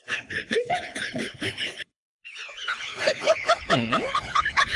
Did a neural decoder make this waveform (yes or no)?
yes